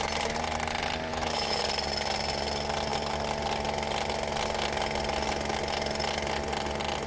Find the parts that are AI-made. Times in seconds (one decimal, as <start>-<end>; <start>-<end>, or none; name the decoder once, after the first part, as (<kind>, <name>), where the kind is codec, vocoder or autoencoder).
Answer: 1.1-1.6 (autoencoder, DAC-VAE)